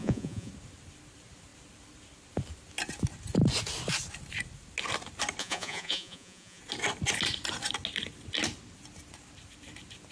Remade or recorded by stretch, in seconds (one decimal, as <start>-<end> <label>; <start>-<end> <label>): 0.0-0.5 remade; 0.5-5.4 recorded; 5.4-6.6 remade; 6.6-10.1 recorded